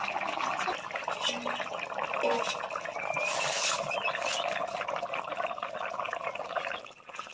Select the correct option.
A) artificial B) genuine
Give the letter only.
B